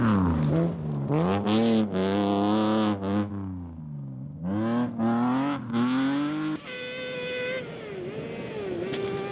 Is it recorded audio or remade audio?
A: recorded